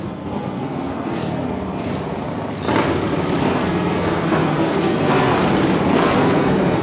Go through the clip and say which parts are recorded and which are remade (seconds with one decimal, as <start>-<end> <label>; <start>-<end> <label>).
0.0-1.9 remade; 1.9-3.4 recorded; 3.4-5.3 remade; 5.3-5.9 recorded; 5.9-6.8 remade